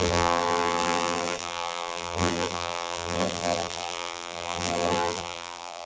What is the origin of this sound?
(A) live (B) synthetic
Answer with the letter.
B